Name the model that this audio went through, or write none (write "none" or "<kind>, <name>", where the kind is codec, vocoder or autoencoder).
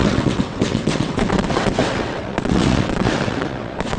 vocoder, WaveNeXt